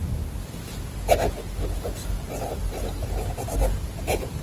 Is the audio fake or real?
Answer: real